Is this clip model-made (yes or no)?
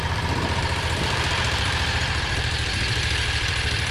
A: yes